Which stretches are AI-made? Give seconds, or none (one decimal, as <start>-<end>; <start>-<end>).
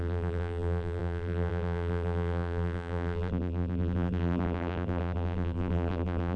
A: 0.0-6.4